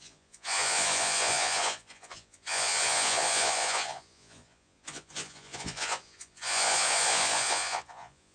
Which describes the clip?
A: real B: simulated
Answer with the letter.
B